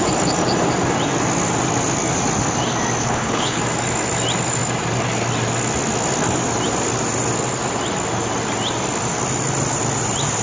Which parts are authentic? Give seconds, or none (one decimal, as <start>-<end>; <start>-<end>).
0.0-3.0; 3.6-10.4